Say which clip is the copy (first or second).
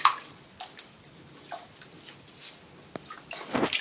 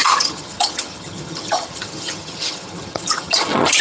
second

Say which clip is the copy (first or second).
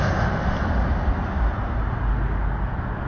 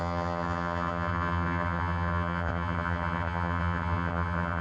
second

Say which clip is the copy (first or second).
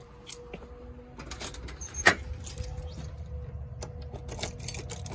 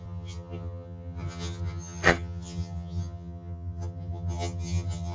second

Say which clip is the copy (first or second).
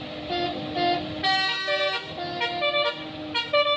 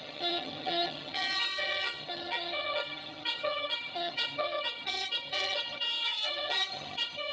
second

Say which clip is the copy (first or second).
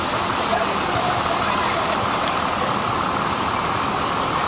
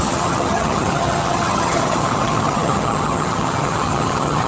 second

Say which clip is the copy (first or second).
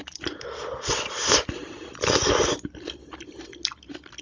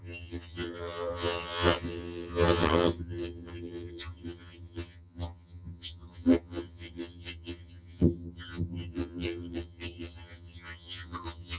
second